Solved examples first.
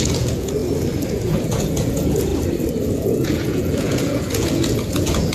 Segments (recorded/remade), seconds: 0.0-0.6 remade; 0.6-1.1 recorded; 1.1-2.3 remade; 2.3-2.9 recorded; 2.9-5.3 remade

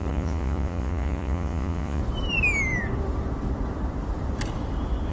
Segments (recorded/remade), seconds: 0.0-2.0 remade; 2.0-5.1 recorded

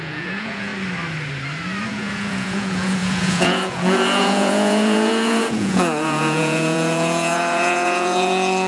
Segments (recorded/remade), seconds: 0.0-0.7 remade; 0.7-1.9 recorded; 1.9-8.7 remade

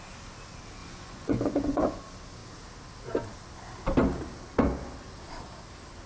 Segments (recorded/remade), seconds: 0.0-0.8 recorded; 0.8-2.0 remade; 2.0-6.1 recorded

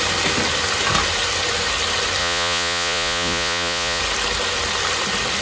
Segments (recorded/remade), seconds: 0.0-2.2 recorded; 2.2-4.0 remade; 4.0-5.4 recorded

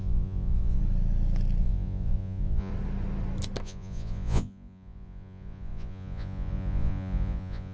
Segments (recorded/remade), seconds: 0.0-0.8 remade; 0.8-1.6 recorded; 1.6-2.7 remade; 2.7-3.6 recorded; 3.6-7.7 remade